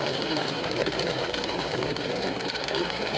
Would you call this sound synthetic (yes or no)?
yes